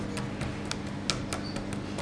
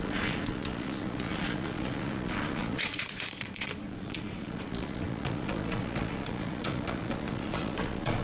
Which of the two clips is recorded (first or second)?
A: first